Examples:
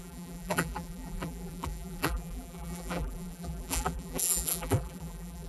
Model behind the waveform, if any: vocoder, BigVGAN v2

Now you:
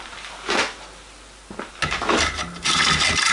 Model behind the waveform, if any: none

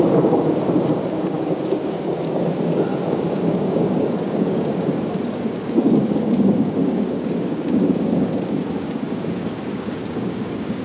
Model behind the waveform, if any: codec, DAC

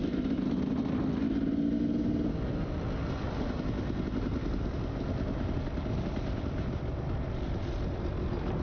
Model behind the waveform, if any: none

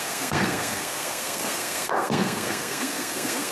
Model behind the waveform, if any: codec, SNAC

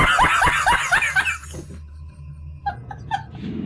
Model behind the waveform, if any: none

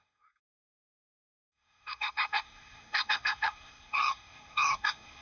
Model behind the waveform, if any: codec, SNAC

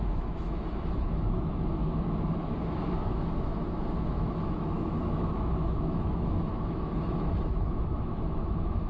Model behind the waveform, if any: autoencoder, DAC-VAE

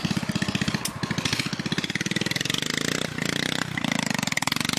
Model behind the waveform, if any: none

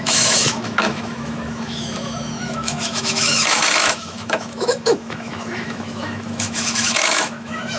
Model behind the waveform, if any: autoencoder, DAC-VAE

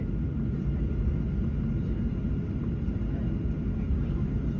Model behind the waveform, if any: none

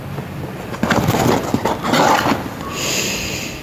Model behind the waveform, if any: none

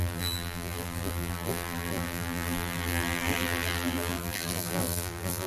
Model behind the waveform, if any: vocoder, BigVGAN v2